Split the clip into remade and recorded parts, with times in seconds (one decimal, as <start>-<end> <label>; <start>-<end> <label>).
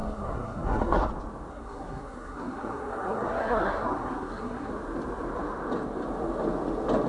0.0-1.1 remade; 1.1-1.5 recorded; 1.5-4.7 remade; 4.7-7.1 recorded